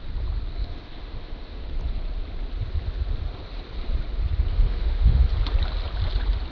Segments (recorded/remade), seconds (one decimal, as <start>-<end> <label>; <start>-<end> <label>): 0.0-0.6 recorded; 0.6-1.7 remade; 1.7-4.5 recorded; 4.5-5.3 remade; 5.3-6.5 recorded